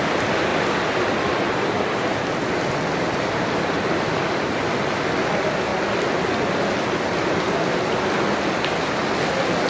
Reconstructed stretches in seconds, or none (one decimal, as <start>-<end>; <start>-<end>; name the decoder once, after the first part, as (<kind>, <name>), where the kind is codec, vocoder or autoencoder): none